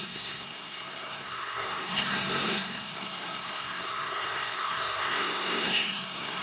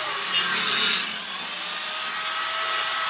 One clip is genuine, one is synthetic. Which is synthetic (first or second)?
first